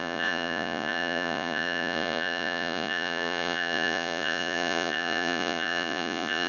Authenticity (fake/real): fake